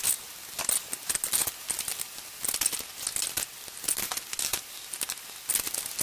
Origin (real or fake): real